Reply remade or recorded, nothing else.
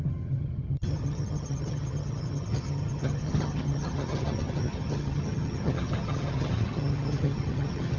remade